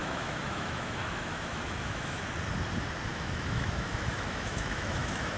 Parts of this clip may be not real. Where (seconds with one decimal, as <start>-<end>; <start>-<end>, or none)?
0.0-2.3; 3.1-5.4